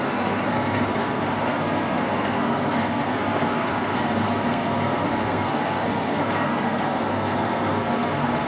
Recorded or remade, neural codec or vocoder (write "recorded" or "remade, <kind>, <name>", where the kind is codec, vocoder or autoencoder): remade, codec, SNAC